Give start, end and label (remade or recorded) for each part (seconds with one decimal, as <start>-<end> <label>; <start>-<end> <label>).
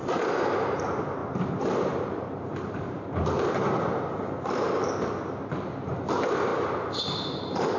0.0-1.2 recorded; 1.2-5.1 remade; 5.1-6.5 recorded; 6.5-7.8 remade